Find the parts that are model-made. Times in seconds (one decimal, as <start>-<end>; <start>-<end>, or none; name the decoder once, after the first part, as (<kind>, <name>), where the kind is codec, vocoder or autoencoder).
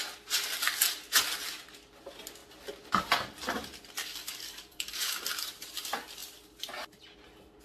4.0-5.2 (codec, DAC)